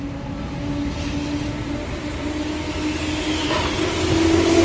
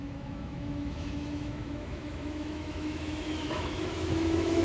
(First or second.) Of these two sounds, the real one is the first